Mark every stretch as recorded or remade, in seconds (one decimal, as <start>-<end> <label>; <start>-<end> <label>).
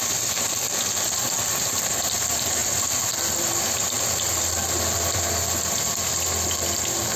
0.0-7.2 recorded